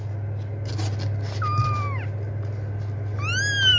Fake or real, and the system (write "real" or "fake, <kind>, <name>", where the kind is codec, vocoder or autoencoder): real